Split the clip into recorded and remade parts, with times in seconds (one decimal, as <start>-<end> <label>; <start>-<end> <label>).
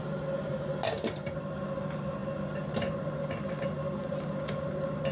0.0-5.1 recorded